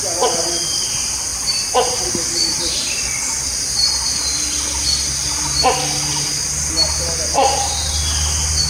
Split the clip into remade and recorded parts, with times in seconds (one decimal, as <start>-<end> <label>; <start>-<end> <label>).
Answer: 0.0-8.7 recorded